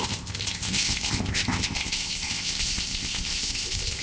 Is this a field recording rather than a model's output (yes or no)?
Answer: no